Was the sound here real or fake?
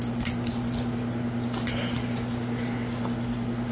real